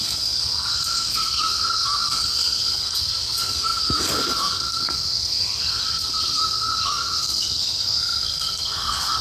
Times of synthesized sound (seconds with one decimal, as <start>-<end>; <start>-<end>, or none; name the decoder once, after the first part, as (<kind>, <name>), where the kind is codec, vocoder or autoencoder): 0.0-9.2 (codec, SNAC)